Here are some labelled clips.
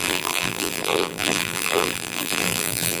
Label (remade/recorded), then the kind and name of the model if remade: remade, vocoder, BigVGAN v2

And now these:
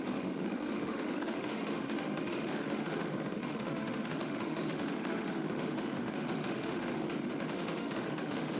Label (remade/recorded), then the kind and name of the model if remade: remade, autoencoder, DAC-VAE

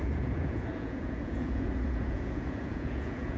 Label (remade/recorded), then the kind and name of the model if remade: remade, vocoder, Vocos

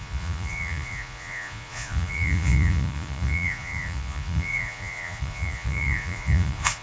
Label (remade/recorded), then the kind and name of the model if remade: remade, vocoder, Vocos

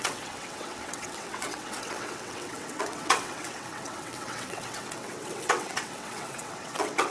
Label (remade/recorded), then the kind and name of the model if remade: remade, vocoder, WaveNeXt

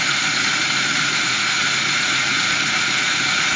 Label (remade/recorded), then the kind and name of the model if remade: remade, vocoder, Vocos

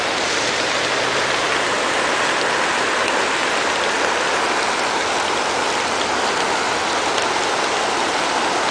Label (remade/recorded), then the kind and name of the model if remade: recorded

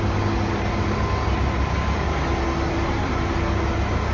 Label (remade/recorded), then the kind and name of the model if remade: recorded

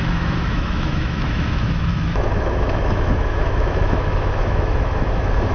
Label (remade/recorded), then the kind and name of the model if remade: remade, autoencoder, DAC-VAE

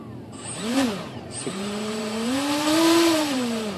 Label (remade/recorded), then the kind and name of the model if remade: remade, vocoder, BigVGAN v2